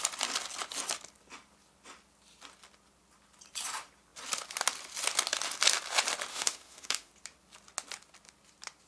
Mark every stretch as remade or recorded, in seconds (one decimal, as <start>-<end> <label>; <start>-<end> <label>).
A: 0.0-6.3 recorded; 6.3-7.1 remade; 7.1-8.9 recorded